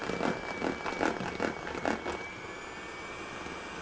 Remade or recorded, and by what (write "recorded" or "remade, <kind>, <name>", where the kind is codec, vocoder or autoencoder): recorded